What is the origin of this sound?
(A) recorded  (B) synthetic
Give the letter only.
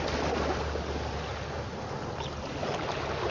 A